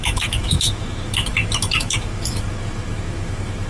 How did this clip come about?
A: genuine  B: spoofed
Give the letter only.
B